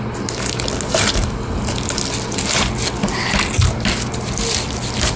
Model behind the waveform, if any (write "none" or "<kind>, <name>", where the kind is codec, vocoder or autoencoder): none